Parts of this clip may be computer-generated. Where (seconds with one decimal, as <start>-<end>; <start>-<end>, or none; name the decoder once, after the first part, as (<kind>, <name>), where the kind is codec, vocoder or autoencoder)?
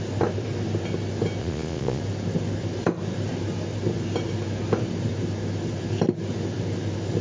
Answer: 1.4-2.0 (vocoder, Vocos)